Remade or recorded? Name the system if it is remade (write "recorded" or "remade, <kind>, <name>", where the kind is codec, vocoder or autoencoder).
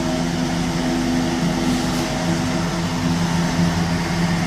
recorded